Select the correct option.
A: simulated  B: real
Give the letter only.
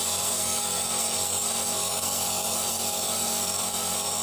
A